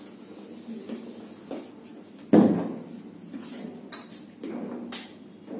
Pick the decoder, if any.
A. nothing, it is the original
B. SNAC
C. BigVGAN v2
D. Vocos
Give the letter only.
A